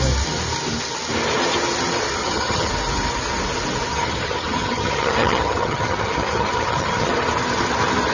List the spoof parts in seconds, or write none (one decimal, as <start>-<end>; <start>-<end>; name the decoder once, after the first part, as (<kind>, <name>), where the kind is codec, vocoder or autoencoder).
2.2-2.7 (vocoder, HiFi-GAN); 3.9-7.1